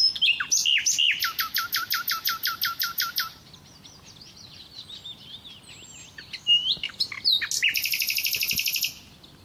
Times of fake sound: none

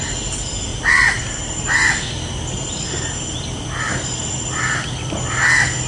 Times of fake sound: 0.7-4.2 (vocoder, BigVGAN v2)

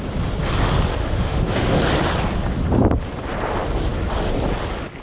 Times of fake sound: 1.0-1.8 (autoencoder, DAC-VAE)

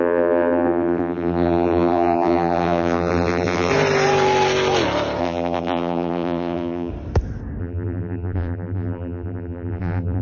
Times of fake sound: 0.0-3.7 (vocoder, BigVGAN v2); 5.2-6.9; 7.6-10.2